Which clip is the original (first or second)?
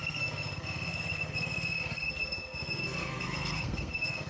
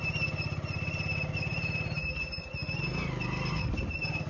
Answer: second